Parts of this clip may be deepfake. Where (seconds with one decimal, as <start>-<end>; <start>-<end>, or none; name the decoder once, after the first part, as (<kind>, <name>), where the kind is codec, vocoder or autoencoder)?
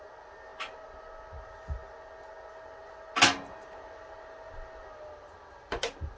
none